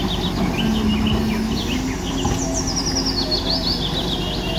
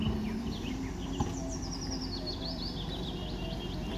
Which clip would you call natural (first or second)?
first